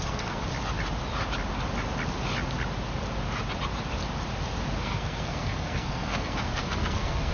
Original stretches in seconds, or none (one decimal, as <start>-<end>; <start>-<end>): 0.4-4.8